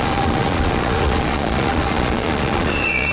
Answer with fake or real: fake